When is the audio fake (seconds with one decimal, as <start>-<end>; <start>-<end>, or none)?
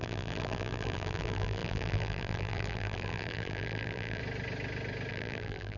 0.0-4.2; 5.1-5.8